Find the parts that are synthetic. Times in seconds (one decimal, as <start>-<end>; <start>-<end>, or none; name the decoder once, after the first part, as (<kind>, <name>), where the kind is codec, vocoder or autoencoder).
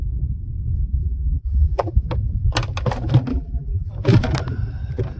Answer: 1.0-1.9 (vocoder, BigVGAN v2); 3.3-3.9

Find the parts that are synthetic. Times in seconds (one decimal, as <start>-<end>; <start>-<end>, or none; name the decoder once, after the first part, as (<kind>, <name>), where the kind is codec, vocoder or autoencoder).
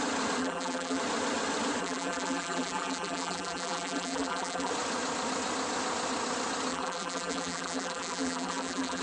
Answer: 0.4-1.0 (vocoder, BigVGAN v2); 1.8-4.7; 6.7-9.0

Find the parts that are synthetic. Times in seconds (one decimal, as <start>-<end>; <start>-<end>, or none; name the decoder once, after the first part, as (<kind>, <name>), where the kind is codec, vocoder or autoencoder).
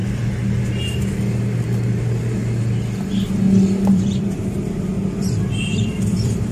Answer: 3.9-6.5 (vocoder, BigVGAN v2)